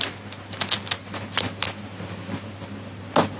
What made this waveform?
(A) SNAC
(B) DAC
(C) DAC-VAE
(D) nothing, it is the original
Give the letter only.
D